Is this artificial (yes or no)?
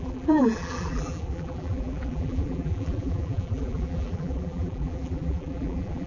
yes